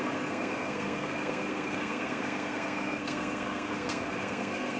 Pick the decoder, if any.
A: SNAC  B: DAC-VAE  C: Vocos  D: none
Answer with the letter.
A